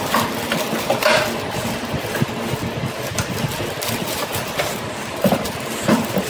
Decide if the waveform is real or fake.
real